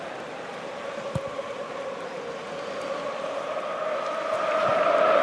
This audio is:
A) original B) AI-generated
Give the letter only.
A